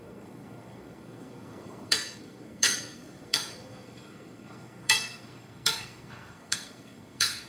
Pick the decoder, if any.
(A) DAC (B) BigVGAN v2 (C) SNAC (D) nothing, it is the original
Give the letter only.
C